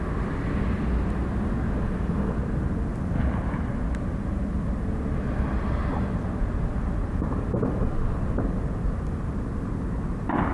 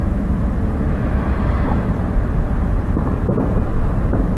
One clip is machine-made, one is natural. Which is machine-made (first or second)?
second